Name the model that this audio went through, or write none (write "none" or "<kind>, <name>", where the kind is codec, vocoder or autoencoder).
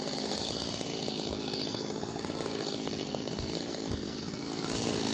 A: codec, SNAC